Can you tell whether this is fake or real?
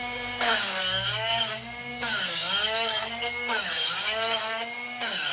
fake